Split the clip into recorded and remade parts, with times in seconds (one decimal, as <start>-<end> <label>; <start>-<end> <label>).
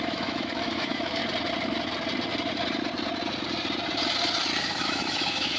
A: 0.0-1.2 remade; 1.2-4.6 recorded; 4.6-5.6 remade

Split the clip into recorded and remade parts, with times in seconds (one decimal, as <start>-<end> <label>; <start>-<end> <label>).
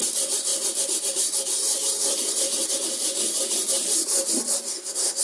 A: 0.0-4.7 recorded; 4.7-5.2 remade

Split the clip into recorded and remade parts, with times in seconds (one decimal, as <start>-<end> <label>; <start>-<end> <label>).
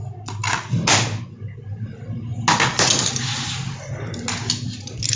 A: 0.0-5.2 recorded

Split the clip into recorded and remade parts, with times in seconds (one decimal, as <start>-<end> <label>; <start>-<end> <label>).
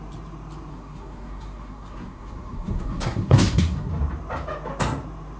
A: 0.0-0.7 recorded; 0.7-3.9 remade; 3.9-5.4 recorded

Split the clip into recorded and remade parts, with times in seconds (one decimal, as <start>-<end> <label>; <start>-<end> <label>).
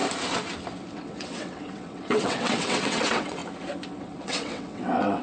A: 0.0-0.9 recorded; 0.9-3.4 remade; 3.4-4.0 recorded; 4.0-5.2 remade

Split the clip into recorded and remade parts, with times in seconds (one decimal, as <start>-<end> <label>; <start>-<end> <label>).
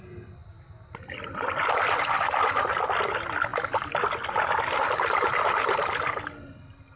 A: 0.0-7.0 recorded